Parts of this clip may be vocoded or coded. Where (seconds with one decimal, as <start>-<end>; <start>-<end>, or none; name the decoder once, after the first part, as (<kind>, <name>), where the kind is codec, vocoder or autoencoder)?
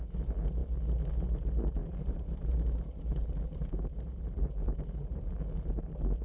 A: 1.8-2.5 (vocoder, BigVGAN v2); 3.2-5.3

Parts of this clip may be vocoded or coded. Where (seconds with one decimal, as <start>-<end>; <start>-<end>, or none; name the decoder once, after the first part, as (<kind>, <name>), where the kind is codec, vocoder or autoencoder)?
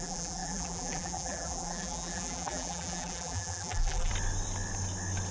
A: 0.0-4.1 (vocoder, BigVGAN v2)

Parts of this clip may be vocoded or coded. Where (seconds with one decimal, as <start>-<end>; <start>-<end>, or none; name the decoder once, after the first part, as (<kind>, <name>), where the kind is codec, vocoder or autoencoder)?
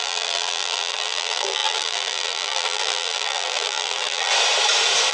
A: 0.0-4.3 (vocoder, BigVGAN v2)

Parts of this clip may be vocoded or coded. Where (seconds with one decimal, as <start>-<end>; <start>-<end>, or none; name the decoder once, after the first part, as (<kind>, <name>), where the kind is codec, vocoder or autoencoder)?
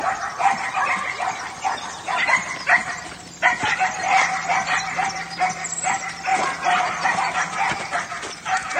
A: 2.8-3.9 (vocoder, BigVGAN v2); 6.3-6.8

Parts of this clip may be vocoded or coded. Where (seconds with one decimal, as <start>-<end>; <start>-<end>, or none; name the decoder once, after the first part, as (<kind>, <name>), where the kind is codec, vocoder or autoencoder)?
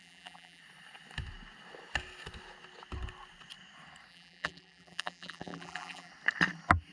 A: 0.0-0.6 (vocoder, BigVGAN v2); 4.1-6.1